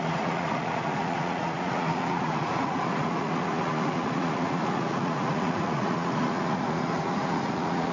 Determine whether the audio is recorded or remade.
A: remade